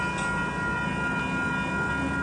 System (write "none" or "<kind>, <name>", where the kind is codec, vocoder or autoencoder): none